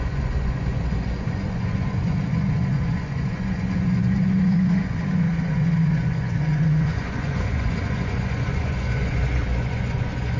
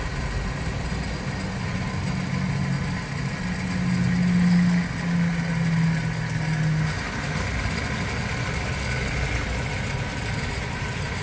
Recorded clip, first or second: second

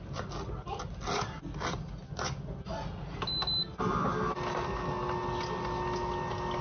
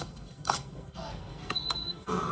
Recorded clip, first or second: first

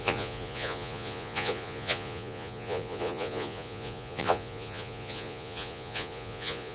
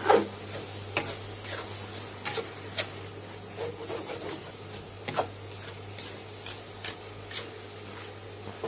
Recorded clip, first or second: second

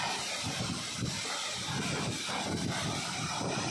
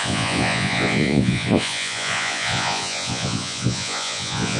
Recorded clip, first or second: first